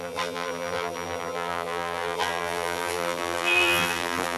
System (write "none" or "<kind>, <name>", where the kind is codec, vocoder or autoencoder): vocoder, BigVGAN v2